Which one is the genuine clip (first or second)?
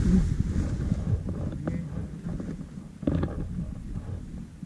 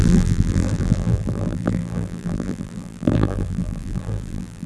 first